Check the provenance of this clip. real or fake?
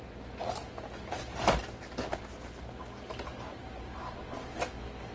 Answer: real